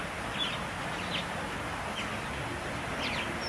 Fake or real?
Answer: real